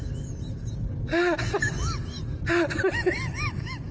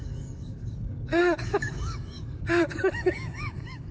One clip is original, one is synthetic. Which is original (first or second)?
first